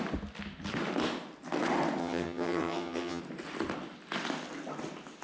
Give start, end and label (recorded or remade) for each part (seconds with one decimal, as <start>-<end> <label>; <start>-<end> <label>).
0.0-2.0 recorded; 2.0-3.2 remade; 3.2-5.2 recorded